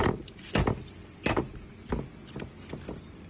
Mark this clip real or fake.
real